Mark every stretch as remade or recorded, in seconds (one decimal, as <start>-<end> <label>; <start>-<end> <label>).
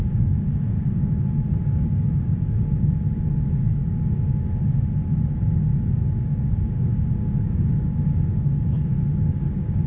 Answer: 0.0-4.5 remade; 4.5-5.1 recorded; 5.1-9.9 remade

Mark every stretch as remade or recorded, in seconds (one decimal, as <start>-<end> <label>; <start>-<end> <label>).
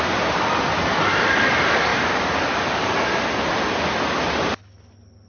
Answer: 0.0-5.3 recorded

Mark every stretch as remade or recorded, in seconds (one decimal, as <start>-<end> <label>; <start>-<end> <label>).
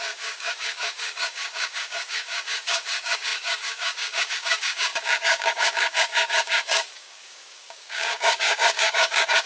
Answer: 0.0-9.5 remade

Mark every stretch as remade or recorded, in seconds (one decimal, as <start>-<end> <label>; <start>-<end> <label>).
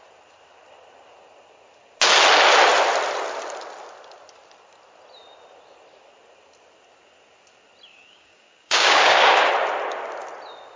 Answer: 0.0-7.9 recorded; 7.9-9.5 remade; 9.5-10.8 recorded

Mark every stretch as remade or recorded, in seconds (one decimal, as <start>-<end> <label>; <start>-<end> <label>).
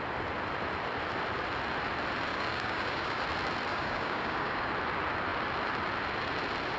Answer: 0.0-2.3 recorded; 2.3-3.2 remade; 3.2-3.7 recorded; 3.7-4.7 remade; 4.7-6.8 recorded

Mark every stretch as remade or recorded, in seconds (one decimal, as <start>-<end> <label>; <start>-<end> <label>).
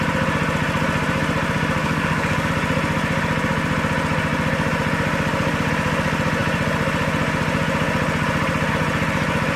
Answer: 0.0-1.8 recorded; 1.8-2.5 remade; 2.5-9.6 recorded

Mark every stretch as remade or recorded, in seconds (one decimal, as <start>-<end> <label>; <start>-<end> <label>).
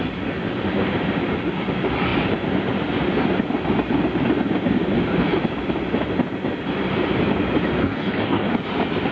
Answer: 0.0-7.8 recorded; 7.8-8.5 remade; 8.5-9.1 recorded